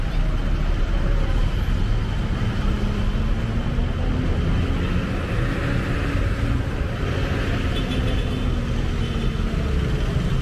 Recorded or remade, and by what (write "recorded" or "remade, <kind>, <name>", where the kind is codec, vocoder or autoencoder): recorded